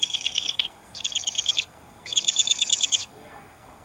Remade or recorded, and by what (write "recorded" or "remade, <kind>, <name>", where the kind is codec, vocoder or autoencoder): remade, codec, SNAC